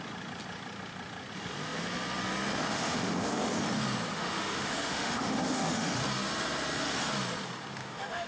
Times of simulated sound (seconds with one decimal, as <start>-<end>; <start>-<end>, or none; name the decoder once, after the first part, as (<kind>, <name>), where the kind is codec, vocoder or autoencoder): 2.7-3.5 (autoencoder, DAC-VAE); 4.1-6.0; 7.8-8.3